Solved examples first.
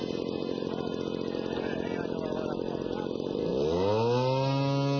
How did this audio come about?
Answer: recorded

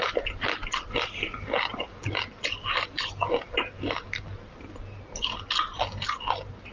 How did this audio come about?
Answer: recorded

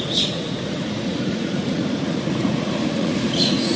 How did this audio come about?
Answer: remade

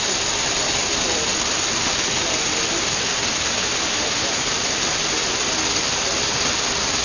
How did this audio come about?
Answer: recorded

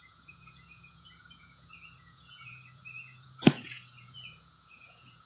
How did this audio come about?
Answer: remade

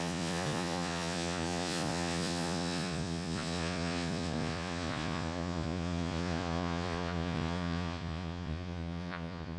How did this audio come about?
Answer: remade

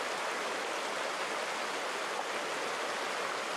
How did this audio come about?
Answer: recorded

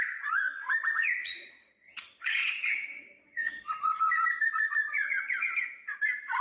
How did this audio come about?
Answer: remade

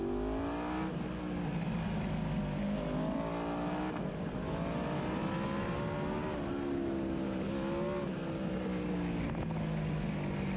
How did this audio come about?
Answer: recorded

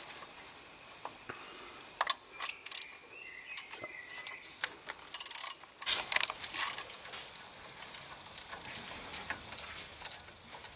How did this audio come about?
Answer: recorded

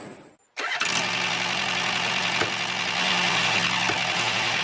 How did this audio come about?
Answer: recorded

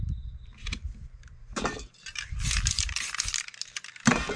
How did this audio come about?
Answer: recorded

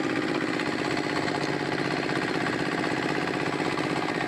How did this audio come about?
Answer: recorded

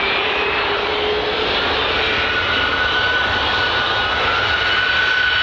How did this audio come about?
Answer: recorded